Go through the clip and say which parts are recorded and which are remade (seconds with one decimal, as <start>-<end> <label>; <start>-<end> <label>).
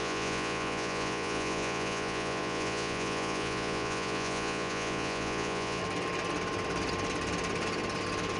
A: 0.0-5.8 remade; 5.8-8.4 recorded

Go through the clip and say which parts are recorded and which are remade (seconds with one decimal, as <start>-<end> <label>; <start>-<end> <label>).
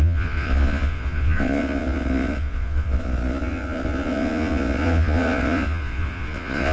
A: 0.0-6.7 remade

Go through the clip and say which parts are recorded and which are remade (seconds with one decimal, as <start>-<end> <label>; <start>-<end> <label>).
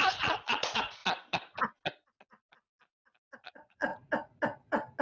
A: 0.0-1.0 remade; 1.0-3.5 recorded; 3.5-3.9 remade; 3.9-5.0 recorded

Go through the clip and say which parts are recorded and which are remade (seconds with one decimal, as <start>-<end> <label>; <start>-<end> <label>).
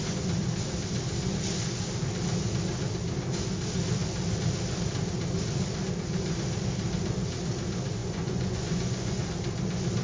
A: 0.0-8.0 recorded; 8.0-9.2 remade; 9.2-10.0 recorded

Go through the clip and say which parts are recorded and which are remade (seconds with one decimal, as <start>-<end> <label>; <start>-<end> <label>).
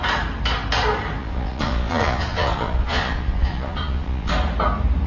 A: 0.0-1.2 recorded; 1.2-4.3 remade; 4.3-5.1 recorded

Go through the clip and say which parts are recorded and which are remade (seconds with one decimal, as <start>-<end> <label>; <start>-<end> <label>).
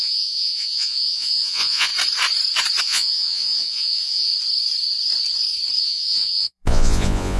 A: 0.0-1.9 remade; 1.9-2.8 recorded; 2.8-4.3 remade; 4.3-5.8 recorded; 5.8-7.4 remade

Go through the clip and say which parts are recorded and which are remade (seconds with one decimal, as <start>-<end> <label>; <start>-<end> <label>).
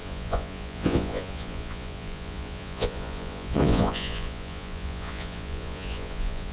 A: 0.0-6.5 remade